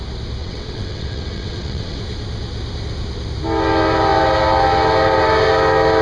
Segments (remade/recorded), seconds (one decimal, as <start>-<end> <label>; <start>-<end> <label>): 0.0-0.4 recorded; 0.4-2.0 remade; 2.0-6.0 recorded